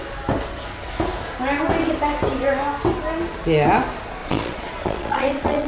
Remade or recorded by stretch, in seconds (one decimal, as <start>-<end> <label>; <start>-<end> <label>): 0.0-4.2 recorded; 4.2-5.7 remade